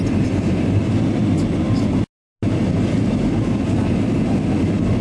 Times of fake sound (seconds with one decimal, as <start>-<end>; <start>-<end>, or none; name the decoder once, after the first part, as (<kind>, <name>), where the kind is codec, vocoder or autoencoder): none